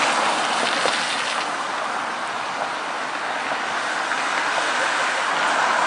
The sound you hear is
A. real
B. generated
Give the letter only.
A